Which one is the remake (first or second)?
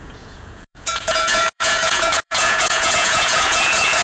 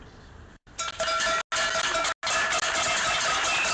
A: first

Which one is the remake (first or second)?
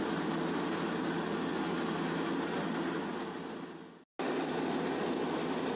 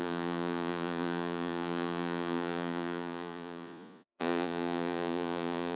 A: second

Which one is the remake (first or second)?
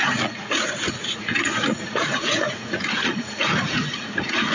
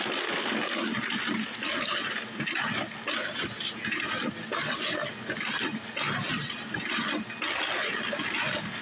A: first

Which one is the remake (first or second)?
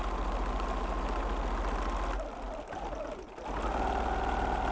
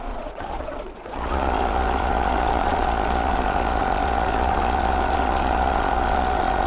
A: second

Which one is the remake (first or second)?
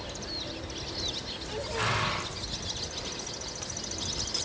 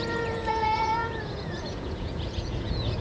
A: second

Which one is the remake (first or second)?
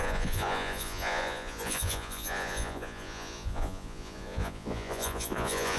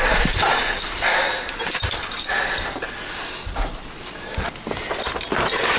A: first